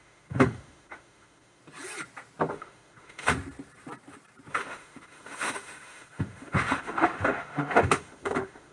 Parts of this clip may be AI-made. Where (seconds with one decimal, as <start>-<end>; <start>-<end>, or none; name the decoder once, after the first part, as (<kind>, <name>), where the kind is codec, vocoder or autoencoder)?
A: 0.0-1.6 (autoencoder, DAC-VAE); 2.5-3.3; 4.5-8.7